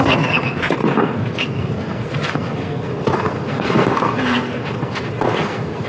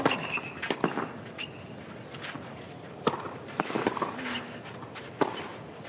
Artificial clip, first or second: first